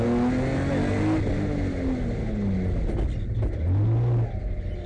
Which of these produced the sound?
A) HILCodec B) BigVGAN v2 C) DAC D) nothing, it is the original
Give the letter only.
D